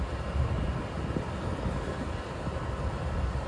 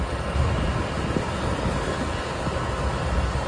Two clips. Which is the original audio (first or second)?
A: second